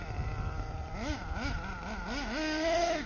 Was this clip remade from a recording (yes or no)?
no